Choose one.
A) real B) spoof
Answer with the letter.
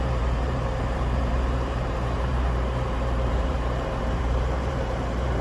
B